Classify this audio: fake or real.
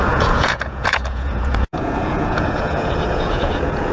fake